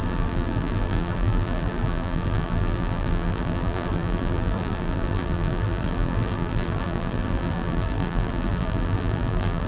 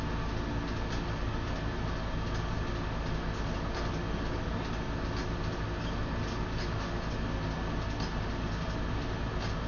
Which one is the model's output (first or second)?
first